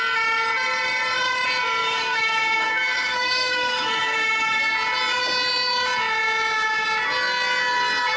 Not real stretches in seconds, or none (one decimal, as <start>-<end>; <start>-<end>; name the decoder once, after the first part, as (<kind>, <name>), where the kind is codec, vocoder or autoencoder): 1.8-4.6 (autoencoder, DAC-VAE)